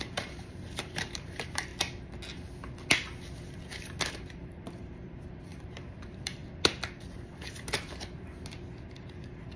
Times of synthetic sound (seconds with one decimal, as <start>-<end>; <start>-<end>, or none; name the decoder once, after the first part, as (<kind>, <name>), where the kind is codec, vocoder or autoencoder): 0.0-1.7 (vocoder, BigVGAN v2); 4.1-6.4; 8.9-9.6